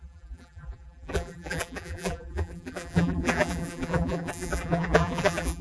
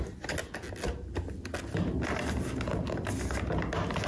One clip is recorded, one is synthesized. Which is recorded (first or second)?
second